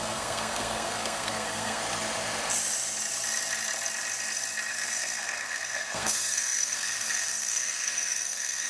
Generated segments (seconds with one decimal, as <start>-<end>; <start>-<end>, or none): 0.0-1.8; 4.7-8.7